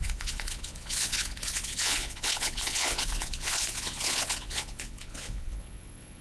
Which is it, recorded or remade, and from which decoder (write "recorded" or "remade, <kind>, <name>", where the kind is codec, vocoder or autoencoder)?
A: remade, vocoder, Vocos